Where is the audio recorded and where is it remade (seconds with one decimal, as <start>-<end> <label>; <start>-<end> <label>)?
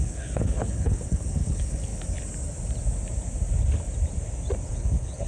0.0-1.9 remade; 1.9-4.7 recorded; 4.7-5.3 remade